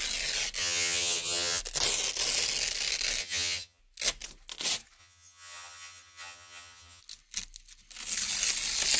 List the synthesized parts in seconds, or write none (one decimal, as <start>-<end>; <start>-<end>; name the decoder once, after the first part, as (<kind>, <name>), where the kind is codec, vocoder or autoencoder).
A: 0.6-1.6 (vocoder, HiFi-GAN); 3.2-3.8; 5.0-7.0